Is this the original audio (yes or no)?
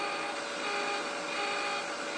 yes